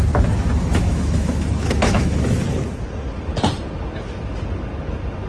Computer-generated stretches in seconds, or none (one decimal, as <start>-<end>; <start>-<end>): 0.7-2.4